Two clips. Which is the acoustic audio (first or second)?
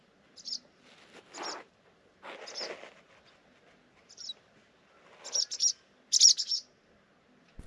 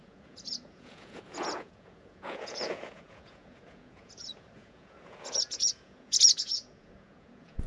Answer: first